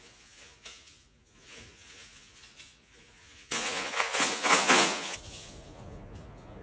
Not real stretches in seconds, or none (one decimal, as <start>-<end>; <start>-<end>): 0.0-6.6